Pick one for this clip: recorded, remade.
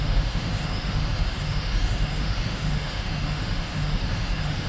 remade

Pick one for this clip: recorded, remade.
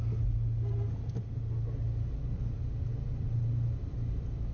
recorded